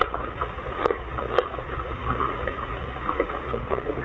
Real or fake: fake